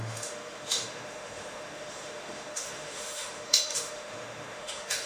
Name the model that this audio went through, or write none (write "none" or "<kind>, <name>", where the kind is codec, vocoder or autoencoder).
autoencoder, DAC-VAE